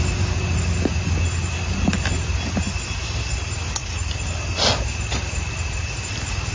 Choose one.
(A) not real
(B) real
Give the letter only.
B